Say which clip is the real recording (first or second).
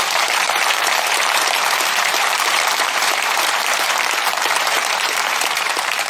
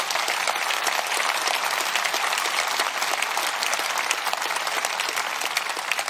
second